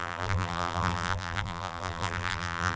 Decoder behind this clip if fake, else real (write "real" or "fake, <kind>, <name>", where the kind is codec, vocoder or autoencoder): fake, vocoder, BigVGAN v2